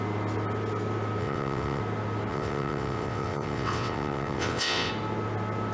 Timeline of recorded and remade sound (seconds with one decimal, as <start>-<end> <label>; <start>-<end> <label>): 0.0-1.2 recorded; 1.2-1.8 remade; 1.8-2.3 recorded; 2.3-4.9 remade; 4.9-5.7 recorded